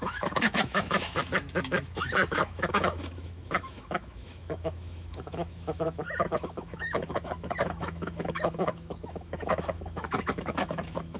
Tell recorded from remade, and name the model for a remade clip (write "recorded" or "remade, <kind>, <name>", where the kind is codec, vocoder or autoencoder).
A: remade, autoencoder, DAC-VAE